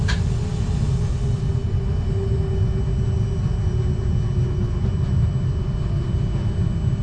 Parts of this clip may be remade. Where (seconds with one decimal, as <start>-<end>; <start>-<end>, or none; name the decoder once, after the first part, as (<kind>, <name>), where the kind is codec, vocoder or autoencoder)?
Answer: none